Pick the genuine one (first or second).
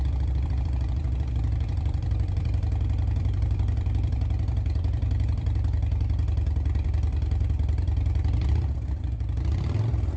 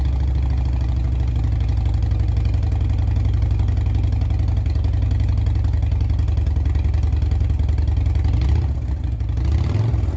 second